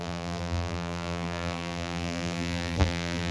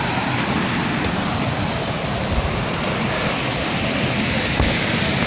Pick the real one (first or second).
second